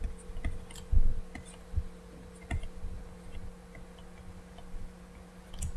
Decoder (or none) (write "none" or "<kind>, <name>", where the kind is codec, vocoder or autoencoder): none